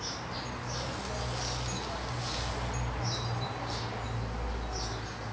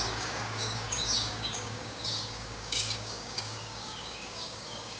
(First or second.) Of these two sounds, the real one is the first